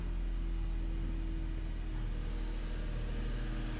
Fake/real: real